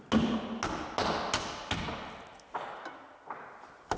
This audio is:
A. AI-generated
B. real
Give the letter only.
B